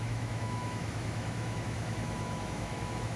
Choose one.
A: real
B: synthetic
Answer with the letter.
B